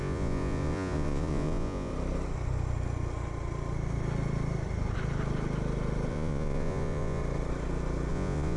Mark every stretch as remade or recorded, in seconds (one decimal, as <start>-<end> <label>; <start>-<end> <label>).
0.0-1.9 remade; 1.9-6.1 recorded; 6.1-7.2 remade; 7.2-8.1 recorded; 8.1-8.6 remade